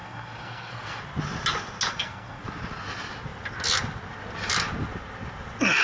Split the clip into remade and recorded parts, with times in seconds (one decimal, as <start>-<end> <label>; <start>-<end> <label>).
0.0-1.0 remade; 1.0-1.9 recorded; 1.9-2.4 remade; 2.4-5.8 recorded